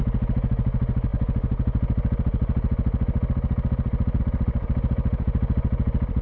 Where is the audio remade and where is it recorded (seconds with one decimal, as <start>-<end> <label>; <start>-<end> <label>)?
0.0-6.2 recorded